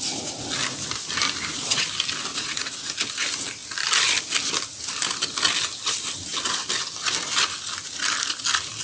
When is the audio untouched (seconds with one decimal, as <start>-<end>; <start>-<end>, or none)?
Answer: 0.0-2.3; 2.9-8.8